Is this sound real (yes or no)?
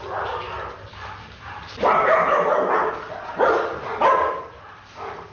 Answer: yes